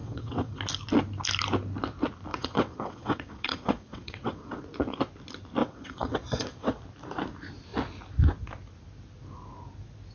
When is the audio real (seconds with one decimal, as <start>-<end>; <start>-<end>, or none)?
0.6-2.3; 4.6-5.6; 6.8-10.1